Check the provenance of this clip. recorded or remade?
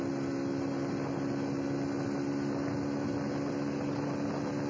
recorded